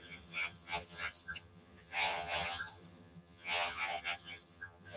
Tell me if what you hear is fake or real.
fake